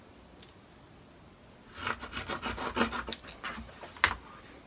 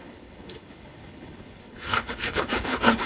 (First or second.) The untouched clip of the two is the first